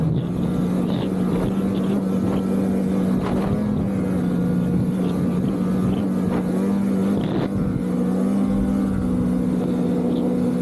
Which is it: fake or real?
real